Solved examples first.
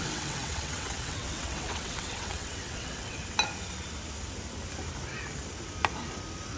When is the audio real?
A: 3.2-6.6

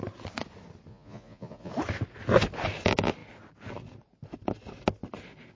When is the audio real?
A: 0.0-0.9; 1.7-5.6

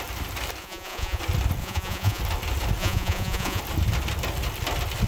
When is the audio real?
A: 0.0-0.6; 1.2-1.6; 2.2-2.8; 3.6-5.1

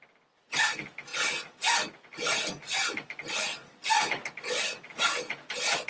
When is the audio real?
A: 0.0-5.9

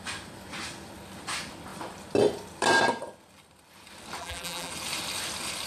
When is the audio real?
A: 0.0-4.2; 4.7-5.7